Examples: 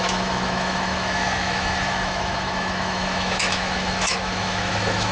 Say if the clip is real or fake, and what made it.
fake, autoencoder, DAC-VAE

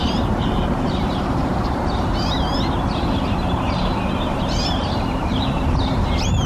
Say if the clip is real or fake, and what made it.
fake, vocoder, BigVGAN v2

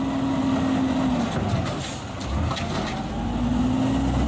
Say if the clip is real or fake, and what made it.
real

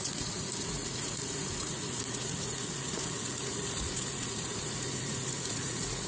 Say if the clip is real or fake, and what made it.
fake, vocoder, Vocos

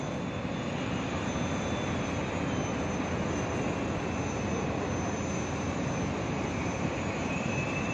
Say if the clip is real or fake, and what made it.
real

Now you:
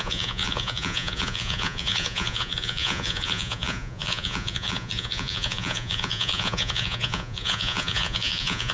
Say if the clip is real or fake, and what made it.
fake, vocoder, Vocos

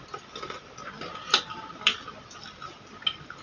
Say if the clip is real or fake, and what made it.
real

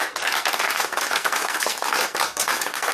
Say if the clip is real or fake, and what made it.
fake, codec, SNAC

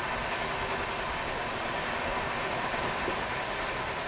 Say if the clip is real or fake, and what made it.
real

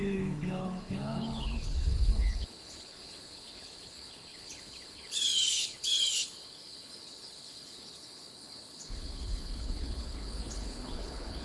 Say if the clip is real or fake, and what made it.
fake, codec, HILCodec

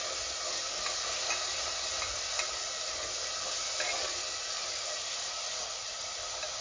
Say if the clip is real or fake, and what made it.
real